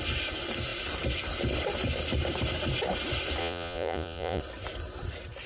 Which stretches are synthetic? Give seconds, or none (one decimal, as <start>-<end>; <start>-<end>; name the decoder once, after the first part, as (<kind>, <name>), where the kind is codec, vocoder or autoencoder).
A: 3.4-4.4 (vocoder, Vocos)